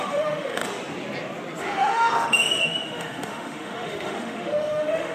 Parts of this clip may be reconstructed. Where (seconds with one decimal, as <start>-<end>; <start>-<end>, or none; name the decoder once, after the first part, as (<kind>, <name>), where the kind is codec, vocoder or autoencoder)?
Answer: 0.0-0.6 (autoencoder, DAC-VAE); 1.6-5.1